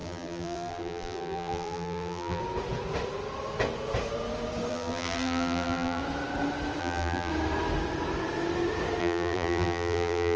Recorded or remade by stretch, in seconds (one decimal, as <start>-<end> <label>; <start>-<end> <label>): 0.0-2.4 remade; 2.4-4.7 recorded; 4.7-6.0 remade; 6.0-6.8 recorded; 6.8-7.3 remade; 7.3-9.0 recorded; 9.0-10.4 remade